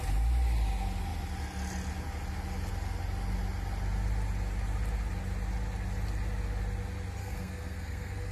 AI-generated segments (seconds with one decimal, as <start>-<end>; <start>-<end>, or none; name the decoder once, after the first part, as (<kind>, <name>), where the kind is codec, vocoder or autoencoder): 7.2-8.3 (codec, SNAC)